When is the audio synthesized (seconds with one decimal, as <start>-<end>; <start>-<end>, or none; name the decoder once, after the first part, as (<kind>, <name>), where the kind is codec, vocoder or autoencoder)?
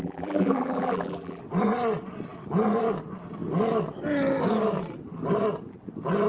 0.0-1.4 (vocoder, BigVGAN v2)